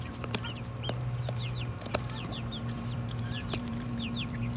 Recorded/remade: remade